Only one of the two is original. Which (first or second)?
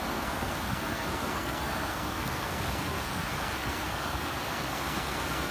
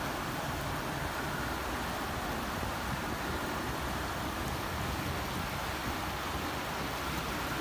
second